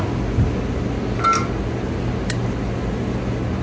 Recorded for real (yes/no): yes